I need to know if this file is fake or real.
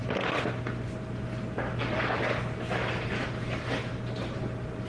real